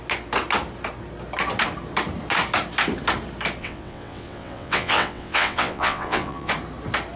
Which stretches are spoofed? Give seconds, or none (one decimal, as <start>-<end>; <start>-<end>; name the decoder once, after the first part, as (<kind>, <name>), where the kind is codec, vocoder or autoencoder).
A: 3.6-6.5 (vocoder, WaveNeXt)